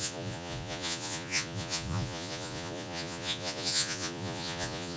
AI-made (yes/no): yes